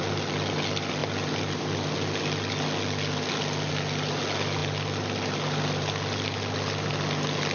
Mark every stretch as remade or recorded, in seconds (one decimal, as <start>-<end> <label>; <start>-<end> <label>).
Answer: 0.0-7.5 recorded